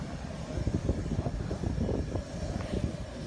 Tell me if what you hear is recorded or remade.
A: recorded